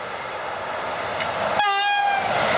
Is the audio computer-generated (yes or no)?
no